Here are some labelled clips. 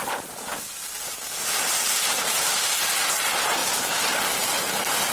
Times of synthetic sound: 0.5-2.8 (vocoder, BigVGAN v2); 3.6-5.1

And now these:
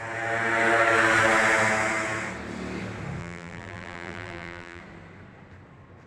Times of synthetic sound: 3.2-4.8 (vocoder, BigVGAN v2)

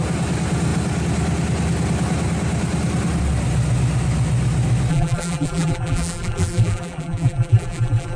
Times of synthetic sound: 4.9-8.2 (vocoder, BigVGAN v2)

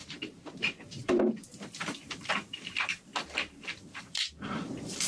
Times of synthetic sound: 0.0-3.1 (vocoder, BigVGAN v2); 4.0-5.1

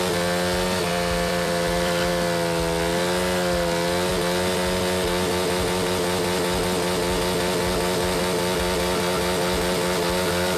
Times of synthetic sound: 0.9-2.1 (vocoder, BigVGAN v2)